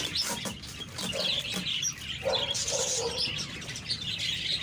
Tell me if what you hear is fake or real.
real